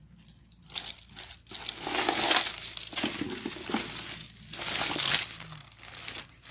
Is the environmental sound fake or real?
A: real